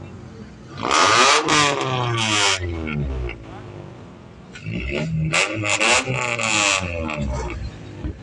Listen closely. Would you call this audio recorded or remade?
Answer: recorded